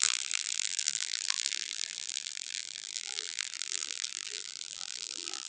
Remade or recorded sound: remade